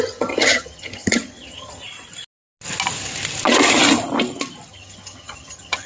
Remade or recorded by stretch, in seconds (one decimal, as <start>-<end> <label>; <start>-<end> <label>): 0.0-1.8 remade; 1.8-4.7 recorded; 4.7-5.9 remade